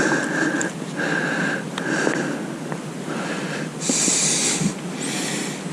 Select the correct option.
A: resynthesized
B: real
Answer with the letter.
B